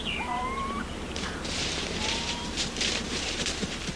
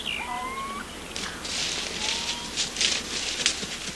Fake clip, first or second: first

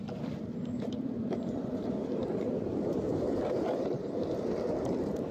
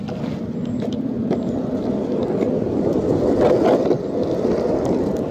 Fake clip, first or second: first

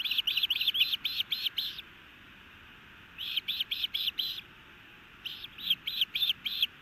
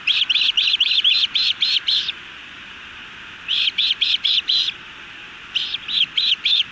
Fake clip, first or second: second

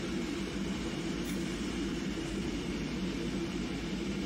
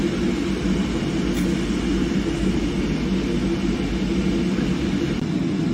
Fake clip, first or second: first